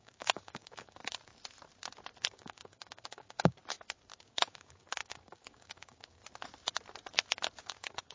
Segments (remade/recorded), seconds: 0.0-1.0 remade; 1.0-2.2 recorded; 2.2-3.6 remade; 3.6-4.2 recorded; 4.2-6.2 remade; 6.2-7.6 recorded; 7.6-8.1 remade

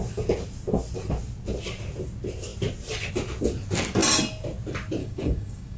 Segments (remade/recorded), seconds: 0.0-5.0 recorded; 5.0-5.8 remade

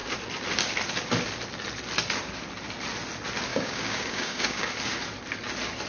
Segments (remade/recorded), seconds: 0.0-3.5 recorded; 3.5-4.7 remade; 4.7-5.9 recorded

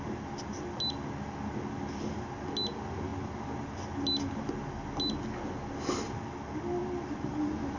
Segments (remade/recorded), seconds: 0.0-7.8 recorded

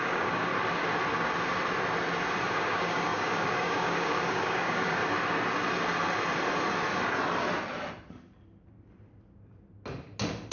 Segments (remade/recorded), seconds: 0.0-0.5 remade; 0.5-2.5 recorded; 2.5-5.0 remade; 5.0-10.5 recorded